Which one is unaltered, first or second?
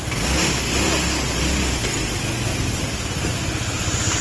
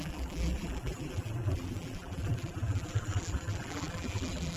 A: first